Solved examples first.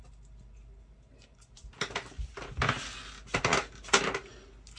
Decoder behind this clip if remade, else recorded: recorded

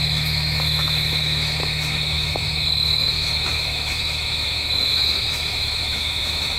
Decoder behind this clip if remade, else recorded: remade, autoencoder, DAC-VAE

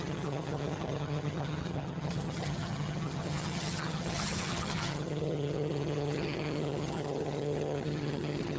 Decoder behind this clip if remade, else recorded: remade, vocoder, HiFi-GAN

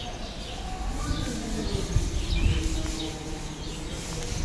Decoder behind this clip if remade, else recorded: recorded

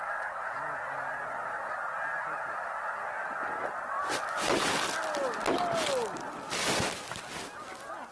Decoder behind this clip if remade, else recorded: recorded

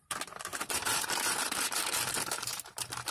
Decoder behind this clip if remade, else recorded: remade, vocoder, BigVGAN v2